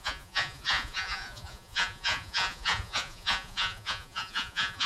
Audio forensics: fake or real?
fake